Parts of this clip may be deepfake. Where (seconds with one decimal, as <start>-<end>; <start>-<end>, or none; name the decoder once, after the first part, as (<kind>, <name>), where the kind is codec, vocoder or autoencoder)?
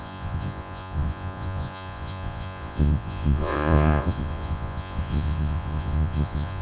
0.0-6.6 (vocoder, Vocos)